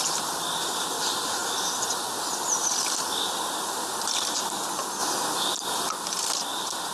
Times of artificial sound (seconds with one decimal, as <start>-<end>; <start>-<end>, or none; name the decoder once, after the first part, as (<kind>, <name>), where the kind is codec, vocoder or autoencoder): none